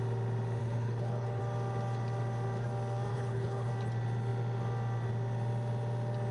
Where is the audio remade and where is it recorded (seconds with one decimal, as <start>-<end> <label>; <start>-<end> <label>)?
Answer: 0.0-0.6 recorded; 0.6-1.4 remade; 1.4-3.1 recorded; 3.1-3.7 remade; 3.7-6.3 recorded